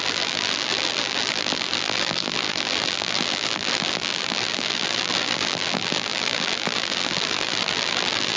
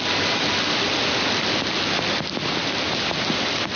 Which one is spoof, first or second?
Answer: first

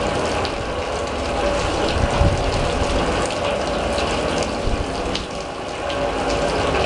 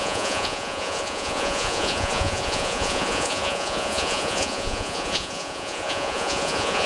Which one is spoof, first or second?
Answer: second